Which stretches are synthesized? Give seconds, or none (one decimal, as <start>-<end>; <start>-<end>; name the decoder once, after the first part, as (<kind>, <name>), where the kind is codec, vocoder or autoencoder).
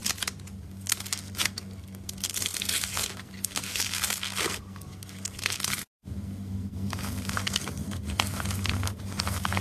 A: 0.5-9.6 (codec, SNAC)